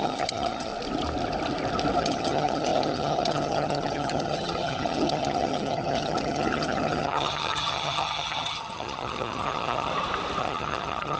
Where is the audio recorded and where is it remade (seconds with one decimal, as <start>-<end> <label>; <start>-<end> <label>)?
0.0-0.7 remade; 0.7-2.0 recorded; 2.0-9.9 remade; 9.9-10.4 recorded; 10.4-11.2 remade